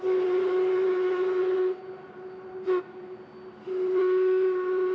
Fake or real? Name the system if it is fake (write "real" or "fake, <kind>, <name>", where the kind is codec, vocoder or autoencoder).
real